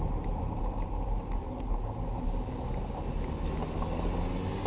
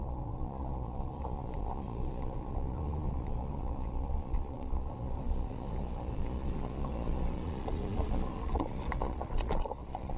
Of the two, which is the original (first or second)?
first